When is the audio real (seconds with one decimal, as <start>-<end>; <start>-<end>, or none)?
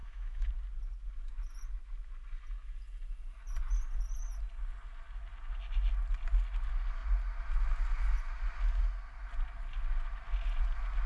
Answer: 0.5-11.1